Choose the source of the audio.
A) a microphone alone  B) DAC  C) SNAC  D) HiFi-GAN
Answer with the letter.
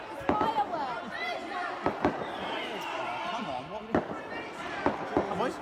A